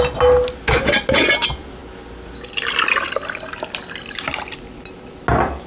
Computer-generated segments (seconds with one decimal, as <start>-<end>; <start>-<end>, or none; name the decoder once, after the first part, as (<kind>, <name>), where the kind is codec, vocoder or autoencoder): none